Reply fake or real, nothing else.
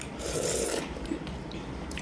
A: real